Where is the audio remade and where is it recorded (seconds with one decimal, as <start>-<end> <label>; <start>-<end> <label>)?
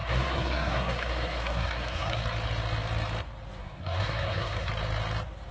0.0-2.2 remade; 2.2-3.6 recorded; 3.6-4.7 remade; 4.7-5.5 recorded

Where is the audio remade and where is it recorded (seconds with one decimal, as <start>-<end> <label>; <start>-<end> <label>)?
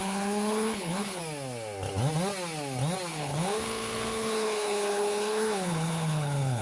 0.0-1.2 remade; 1.2-3.1 recorded; 3.1-6.6 remade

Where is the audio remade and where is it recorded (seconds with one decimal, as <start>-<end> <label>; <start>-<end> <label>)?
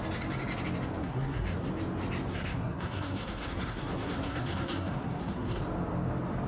0.0-1.0 recorded; 1.0-1.7 remade; 1.7-2.3 recorded; 2.3-5.6 remade; 5.6-6.5 recorded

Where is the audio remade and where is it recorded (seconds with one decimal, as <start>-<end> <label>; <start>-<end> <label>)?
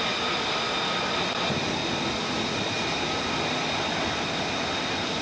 0.0-5.2 recorded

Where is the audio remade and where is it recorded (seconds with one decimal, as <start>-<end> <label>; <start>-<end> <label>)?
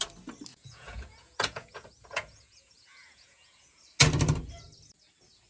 0.0-0.5 recorded; 0.5-3.8 remade; 3.8-5.5 recorded